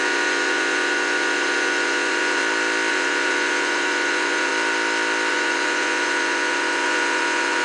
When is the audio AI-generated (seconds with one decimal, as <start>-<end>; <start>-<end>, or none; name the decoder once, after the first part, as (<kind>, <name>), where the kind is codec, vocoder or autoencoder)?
0.0-2.4 (vocoder, Vocos); 2.9-4.5; 5.3-7.6